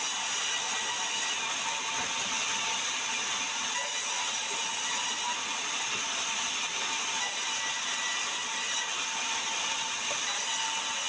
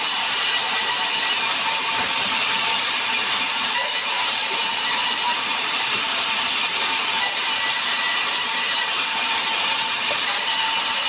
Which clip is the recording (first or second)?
first